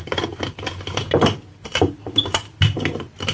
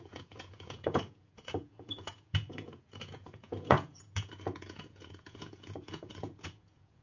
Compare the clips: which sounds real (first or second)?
first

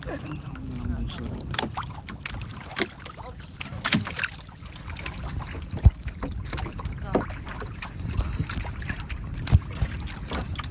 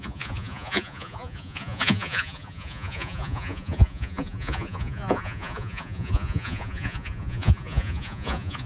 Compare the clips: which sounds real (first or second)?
first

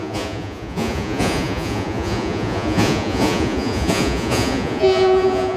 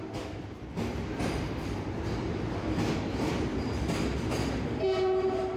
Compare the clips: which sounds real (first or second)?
second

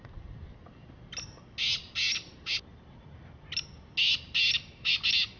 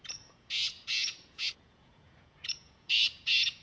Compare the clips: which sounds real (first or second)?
first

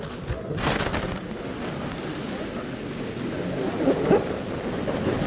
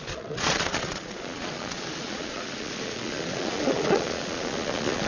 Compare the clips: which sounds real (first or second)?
first